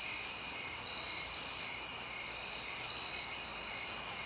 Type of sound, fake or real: real